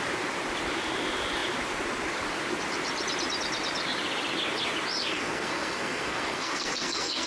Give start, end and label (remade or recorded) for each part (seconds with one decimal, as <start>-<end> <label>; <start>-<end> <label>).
0.0-5.0 recorded; 5.0-7.3 remade